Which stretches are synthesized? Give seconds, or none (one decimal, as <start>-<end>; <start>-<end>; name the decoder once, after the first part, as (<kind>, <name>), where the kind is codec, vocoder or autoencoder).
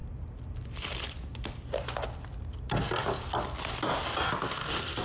none